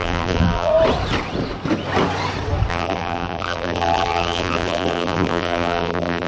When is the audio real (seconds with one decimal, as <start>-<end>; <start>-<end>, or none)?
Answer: 0.7-2.7